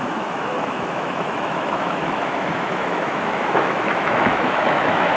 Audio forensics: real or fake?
fake